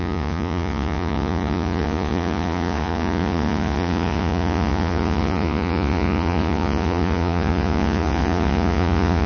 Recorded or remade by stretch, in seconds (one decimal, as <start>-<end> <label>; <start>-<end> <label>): 0.0-9.3 remade